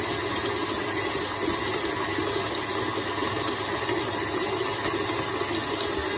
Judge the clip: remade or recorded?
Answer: recorded